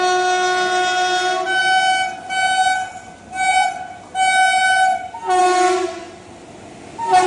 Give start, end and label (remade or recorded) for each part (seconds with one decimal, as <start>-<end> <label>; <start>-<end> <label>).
0.0-7.3 recorded